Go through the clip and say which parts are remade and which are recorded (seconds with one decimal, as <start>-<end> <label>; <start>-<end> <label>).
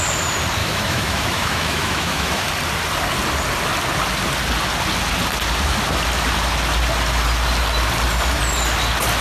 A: 0.0-0.6 recorded; 0.6-2.5 remade; 2.5-9.2 recorded